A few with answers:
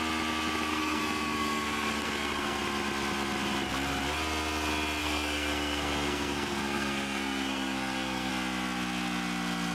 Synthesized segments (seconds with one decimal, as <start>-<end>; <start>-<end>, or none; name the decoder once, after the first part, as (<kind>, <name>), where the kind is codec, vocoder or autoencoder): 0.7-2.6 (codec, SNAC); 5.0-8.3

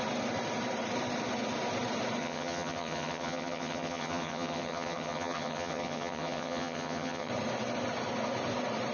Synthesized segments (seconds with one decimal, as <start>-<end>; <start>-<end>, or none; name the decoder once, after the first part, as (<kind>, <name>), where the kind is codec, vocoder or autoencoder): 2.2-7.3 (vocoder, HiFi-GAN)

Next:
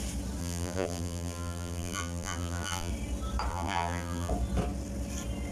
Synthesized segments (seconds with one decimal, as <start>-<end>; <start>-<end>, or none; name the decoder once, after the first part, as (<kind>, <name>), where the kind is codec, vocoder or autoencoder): 0.4-2.9 (vocoder, BigVGAN v2); 3.5-4.3

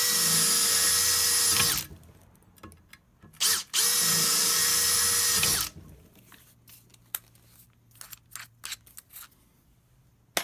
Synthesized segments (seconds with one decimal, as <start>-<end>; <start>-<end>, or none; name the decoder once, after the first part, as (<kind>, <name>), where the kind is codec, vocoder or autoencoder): none